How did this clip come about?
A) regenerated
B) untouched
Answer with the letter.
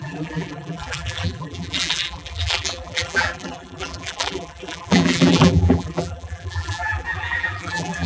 A